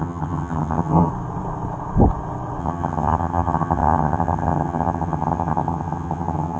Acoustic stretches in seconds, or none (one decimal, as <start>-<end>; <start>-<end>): 1.1-2.6